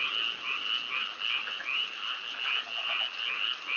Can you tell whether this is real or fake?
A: real